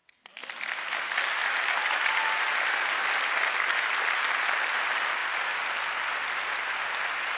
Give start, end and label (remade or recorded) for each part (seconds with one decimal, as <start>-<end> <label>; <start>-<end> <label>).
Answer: 0.0-0.6 remade; 0.6-5.2 recorded; 5.2-7.4 remade